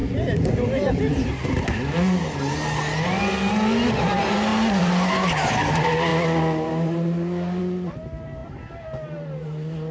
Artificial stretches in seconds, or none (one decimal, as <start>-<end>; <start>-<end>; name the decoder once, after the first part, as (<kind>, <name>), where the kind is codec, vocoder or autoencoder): none